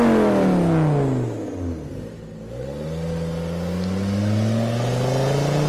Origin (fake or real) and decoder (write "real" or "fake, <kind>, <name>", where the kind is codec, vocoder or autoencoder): real